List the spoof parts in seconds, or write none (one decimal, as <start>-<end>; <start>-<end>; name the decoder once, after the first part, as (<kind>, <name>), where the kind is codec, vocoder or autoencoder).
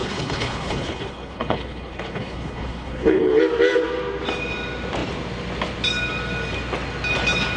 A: 0.0-3.4 (codec, HILCodec)